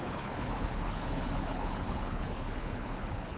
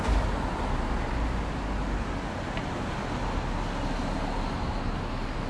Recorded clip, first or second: second